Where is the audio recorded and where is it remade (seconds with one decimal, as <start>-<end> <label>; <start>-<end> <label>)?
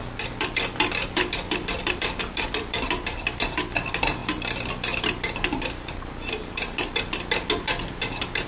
0.0-8.5 recorded